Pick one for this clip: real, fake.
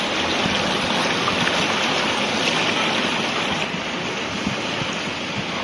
real